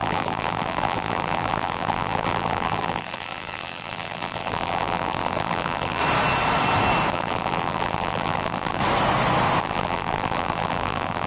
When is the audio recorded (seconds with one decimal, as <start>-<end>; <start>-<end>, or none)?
6.0-7.1; 8.8-9.6